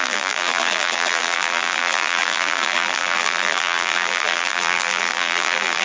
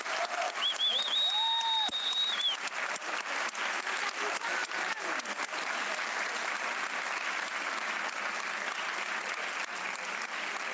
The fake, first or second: first